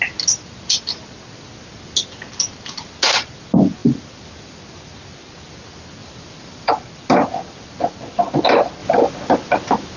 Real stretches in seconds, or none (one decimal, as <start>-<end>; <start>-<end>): 0.0-3.8; 4.6-6.0; 6.7-10.0